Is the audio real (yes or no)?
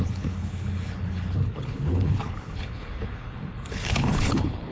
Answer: no